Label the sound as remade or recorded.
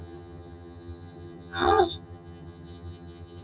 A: remade